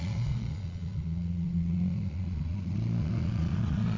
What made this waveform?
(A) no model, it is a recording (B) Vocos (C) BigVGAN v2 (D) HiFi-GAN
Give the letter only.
B